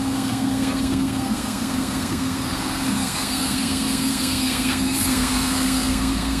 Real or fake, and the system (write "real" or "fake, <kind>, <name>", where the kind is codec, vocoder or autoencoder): fake, codec, SNAC